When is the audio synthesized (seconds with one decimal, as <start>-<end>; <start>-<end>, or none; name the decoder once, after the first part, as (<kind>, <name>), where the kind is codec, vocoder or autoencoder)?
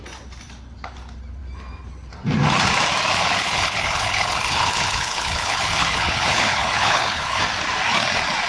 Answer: 3.1-7.4 (codec, HILCodec)